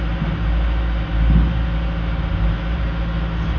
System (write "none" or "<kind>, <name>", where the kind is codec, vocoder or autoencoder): none